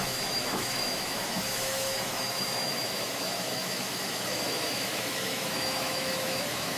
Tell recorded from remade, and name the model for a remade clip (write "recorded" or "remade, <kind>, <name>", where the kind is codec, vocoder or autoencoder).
remade, autoencoder, DAC-VAE